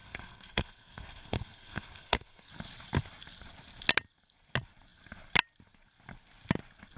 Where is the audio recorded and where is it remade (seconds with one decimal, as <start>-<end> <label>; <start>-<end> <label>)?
0.0-2.5 remade; 2.5-7.0 recorded